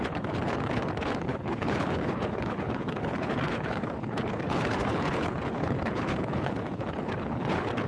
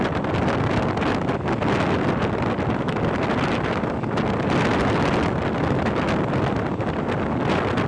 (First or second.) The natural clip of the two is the second